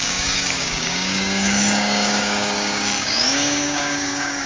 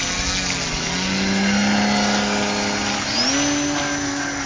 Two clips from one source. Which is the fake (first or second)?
first